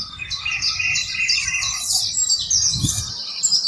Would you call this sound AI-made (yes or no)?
no